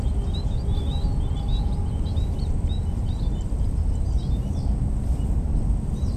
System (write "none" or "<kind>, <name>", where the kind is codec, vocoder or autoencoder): none